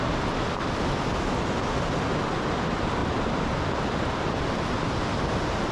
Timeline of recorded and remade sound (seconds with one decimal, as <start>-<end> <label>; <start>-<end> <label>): 0.0-5.7 recorded